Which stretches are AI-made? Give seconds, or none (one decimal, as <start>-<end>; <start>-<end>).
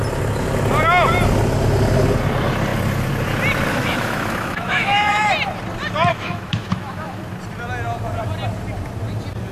3.7-5.3; 6.1-7.2